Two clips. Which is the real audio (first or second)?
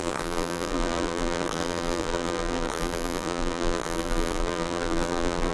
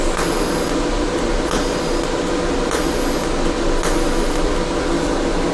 second